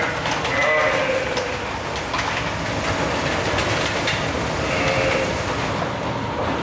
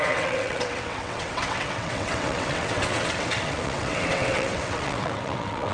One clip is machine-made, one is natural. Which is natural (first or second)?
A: first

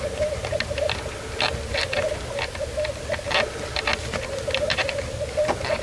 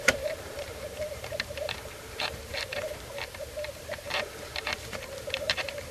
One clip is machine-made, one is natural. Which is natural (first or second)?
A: first